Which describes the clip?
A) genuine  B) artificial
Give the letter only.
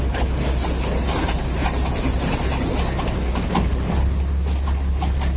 A